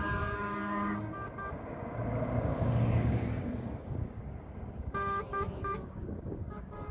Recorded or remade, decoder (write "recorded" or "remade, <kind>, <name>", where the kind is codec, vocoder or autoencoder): remade, codec, DAC